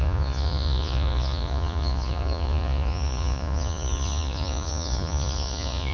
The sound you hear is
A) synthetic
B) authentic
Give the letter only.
A